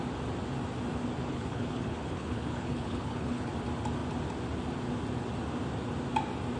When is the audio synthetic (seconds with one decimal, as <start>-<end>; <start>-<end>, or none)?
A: 1.3-3.5